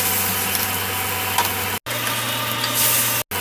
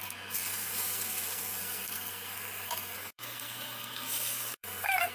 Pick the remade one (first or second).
second